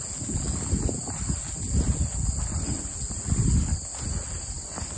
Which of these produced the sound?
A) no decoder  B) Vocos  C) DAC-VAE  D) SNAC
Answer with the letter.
A